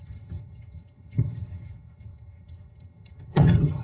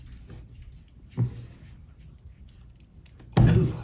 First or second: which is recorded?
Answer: second